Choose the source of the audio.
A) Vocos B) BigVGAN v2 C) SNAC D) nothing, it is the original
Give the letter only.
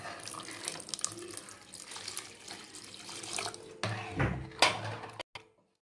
D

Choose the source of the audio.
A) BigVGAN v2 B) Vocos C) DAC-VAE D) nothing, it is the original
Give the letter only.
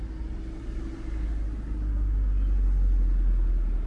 D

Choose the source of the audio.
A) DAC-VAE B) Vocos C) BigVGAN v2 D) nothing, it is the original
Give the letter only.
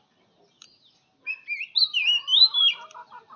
D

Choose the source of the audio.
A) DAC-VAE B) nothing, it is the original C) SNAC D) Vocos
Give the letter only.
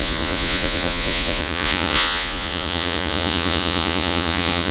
D